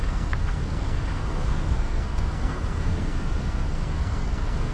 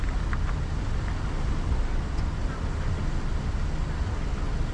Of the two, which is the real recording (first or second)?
second